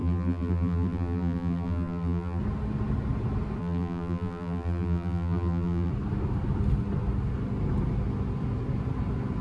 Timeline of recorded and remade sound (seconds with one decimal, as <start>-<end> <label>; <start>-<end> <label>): 0.0-2.4 remade; 2.4-3.6 recorded; 3.6-5.9 remade; 5.9-9.4 recorded